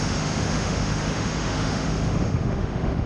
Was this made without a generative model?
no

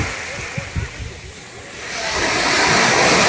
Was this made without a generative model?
yes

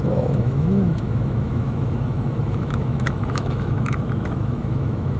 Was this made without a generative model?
no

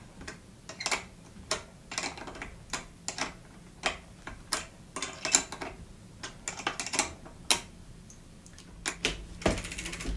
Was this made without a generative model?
yes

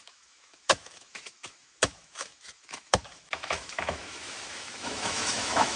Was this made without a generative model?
no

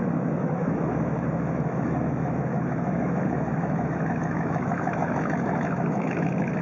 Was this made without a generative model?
no